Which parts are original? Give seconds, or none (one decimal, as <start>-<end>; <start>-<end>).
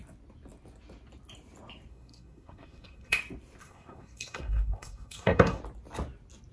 0.0-1.9; 3.2-3.6; 5.6-6.5